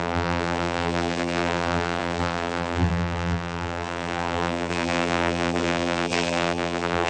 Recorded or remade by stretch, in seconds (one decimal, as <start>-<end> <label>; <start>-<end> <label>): 0.0-7.1 remade